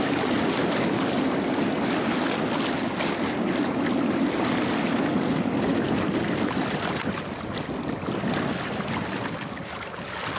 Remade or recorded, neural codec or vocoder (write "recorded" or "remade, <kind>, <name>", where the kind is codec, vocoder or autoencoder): recorded